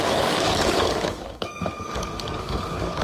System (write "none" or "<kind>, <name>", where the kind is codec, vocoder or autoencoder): codec, DAC